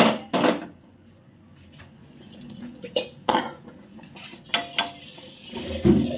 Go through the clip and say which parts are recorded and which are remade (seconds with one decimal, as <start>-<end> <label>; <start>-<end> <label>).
0.0-0.9 recorded; 0.9-4.1 remade; 4.1-6.2 recorded